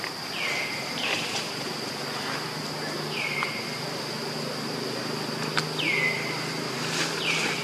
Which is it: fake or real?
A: real